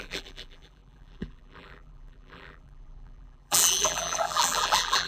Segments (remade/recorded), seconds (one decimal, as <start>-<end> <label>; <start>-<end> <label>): 0.0-5.1 remade